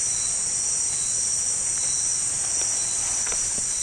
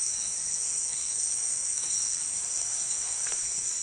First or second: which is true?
first